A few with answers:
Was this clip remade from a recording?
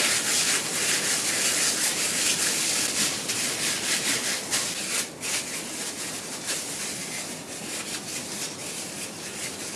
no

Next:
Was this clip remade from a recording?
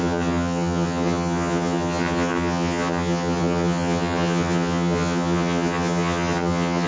yes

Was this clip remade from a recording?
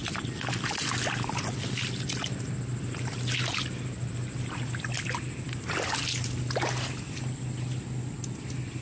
no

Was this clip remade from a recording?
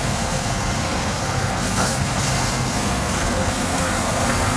yes